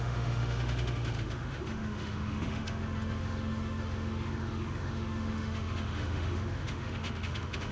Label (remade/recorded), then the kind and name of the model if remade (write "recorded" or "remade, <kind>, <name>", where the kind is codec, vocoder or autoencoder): remade, autoencoder, DAC-VAE